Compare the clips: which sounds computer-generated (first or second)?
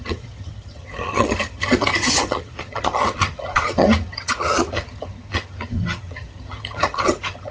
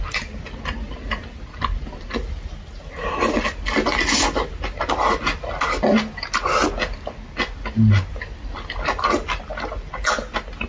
first